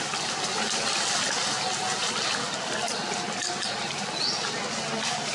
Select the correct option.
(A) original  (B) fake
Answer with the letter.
A